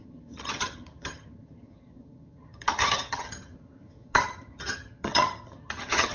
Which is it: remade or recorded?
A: remade